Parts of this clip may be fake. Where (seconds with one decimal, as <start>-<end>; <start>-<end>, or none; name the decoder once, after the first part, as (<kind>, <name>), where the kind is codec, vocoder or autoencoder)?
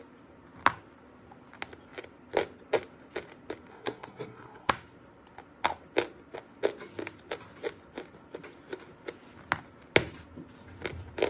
3.7-4.7 (codec, SNAC)